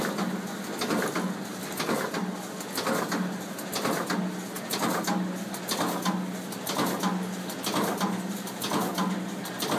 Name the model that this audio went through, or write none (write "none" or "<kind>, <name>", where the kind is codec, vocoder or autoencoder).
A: none